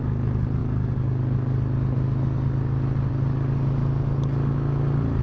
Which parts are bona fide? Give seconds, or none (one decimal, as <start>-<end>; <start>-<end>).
0.0-5.2